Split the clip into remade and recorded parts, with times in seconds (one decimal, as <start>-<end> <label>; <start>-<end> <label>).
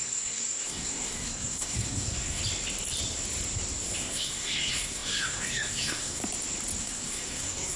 0.0-2.4 remade; 2.4-4.0 recorded; 4.0-6.2 remade; 6.2-6.8 recorded; 6.8-7.8 remade